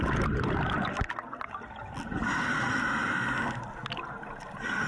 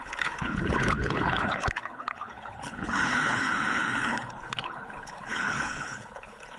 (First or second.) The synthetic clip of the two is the second